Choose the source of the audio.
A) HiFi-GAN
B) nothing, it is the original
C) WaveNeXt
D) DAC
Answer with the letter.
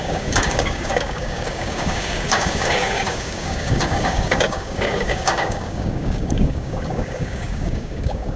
D